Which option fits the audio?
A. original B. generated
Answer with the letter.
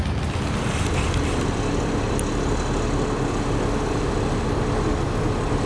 A